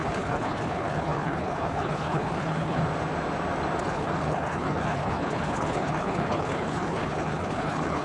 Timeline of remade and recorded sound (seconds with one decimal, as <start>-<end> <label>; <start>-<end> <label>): 0.0-2.8 remade; 2.8-3.8 recorded; 3.8-8.0 remade